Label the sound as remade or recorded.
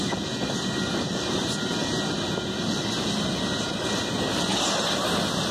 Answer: recorded